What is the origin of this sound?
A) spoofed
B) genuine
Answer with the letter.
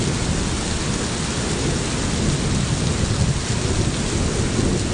B